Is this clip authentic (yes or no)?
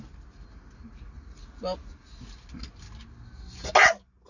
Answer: yes